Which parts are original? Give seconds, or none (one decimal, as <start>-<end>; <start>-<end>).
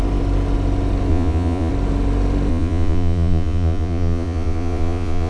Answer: 0.0-1.1; 1.7-2.5